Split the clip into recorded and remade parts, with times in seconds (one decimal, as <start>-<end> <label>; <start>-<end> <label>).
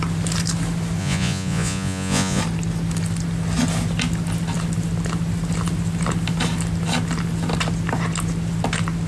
0.0-1.0 recorded; 1.0-2.4 remade; 2.4-9.1 recorded